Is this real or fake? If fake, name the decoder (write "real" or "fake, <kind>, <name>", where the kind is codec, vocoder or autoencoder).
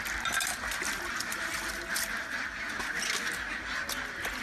real